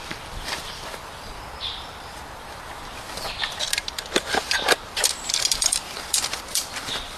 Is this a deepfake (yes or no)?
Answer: yes